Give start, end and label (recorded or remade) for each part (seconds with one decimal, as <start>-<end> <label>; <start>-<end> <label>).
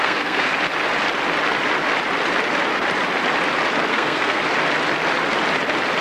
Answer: 0.0-0.5 remade; 0.5-3.9 recorded; 3.9-4.4 remade; 4.4-6.0 recorded